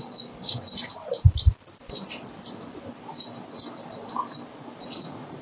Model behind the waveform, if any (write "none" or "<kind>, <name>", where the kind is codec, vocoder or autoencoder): none